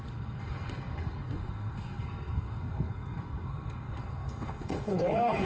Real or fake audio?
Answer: fake